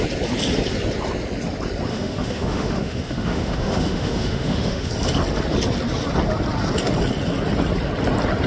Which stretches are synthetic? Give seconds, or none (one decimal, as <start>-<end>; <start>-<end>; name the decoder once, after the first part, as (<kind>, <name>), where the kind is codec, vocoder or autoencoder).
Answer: 1.9-4.9 (autoencoder, DAC-VAE)